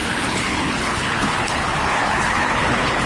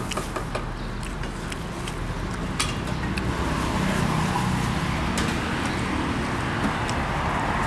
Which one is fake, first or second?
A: first